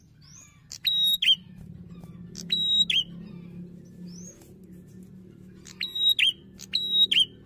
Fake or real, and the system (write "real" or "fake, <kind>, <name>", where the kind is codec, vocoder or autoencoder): real